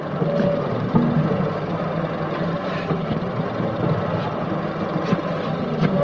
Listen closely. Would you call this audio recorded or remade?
recorded